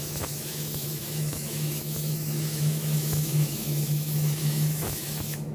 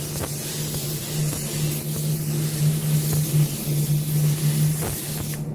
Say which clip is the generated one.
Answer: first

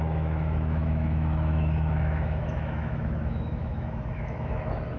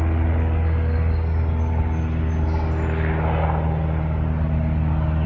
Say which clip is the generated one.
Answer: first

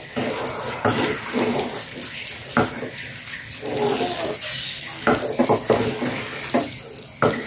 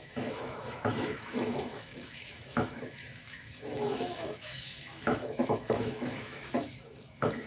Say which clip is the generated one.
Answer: second